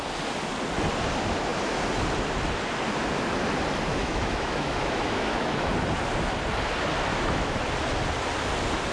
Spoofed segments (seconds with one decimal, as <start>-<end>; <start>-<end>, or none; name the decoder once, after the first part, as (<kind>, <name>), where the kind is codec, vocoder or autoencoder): 3.9-5.7 (autoencoder, DAC-VAE); 7.1-7.7